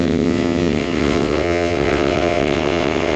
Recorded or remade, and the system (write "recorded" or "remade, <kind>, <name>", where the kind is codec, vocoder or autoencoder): remade, vocoder, WaveNeXt